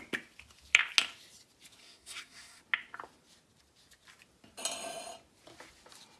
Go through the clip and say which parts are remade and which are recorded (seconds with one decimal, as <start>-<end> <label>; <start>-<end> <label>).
0.0-1.8 recorded; 1.8-2.6 remade; 2.6-6.2 recorded